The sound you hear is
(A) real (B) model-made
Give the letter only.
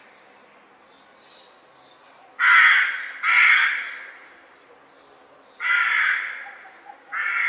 A